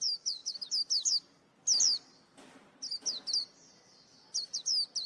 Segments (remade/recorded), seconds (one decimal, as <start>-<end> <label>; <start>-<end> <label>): 0.0-5.1 recorded